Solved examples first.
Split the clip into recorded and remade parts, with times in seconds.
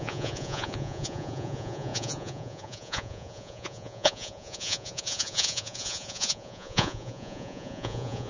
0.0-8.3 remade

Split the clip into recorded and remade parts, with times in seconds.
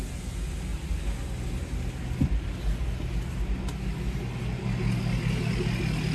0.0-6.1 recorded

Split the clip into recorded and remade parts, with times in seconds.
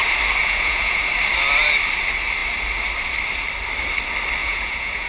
0.0-0.4 recorded; 0.4-1.0 remade; 1.0-4.4 recorded; 4.4-5.1 remade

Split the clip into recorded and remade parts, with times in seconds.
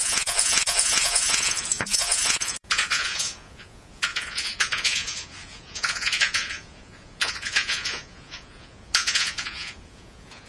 0.0-10.5 remade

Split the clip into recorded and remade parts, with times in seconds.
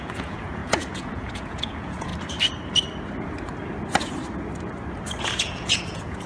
0.0-2.1 remade; 2.1-5.2 recorded; 5.2-6.3 remade